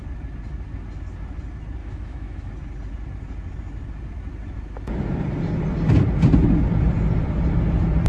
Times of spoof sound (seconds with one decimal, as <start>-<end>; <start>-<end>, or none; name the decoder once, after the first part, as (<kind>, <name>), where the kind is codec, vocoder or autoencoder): 1.8-2.5 (autoencoder, DAC-VAE)